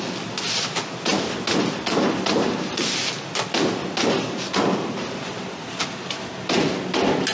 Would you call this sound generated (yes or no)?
no